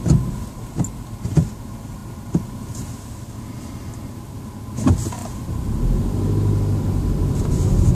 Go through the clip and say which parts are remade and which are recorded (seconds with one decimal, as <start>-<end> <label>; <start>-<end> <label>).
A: 0.0-7.9 recorded